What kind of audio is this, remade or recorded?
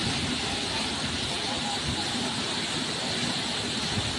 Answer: recorded